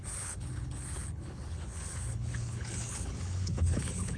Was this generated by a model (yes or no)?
yes